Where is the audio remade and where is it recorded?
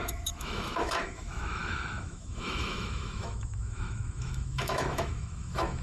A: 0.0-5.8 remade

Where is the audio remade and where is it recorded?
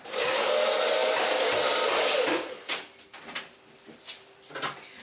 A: 0.0-1.0 recorded; 1.0-2.6 remade; 2.6-5.0 recorded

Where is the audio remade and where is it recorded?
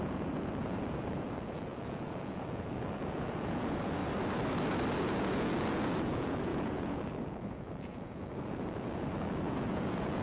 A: 0.0-4.0 remade; 4.0-5.0 recorded; 5.0-10.2 remade